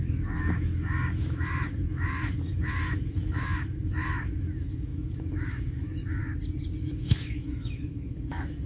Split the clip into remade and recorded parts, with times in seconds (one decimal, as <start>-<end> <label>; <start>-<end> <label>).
0.0-6.2 remade; 6.2-6.8 recorded; 6.8-8.7 remade